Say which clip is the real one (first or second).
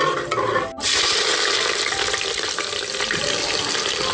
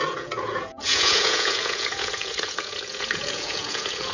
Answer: first